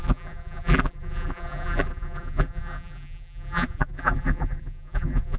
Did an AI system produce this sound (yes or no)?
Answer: yes